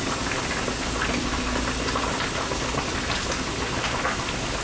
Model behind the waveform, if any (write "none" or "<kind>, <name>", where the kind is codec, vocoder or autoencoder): none